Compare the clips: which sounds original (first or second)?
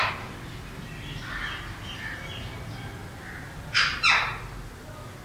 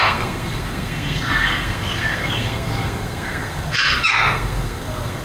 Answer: first